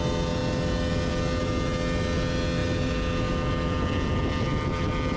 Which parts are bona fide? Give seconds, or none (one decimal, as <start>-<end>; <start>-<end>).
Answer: 0.0-5.2